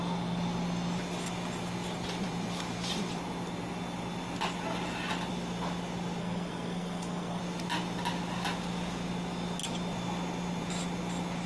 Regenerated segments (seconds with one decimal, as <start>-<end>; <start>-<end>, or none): 6.2-7.4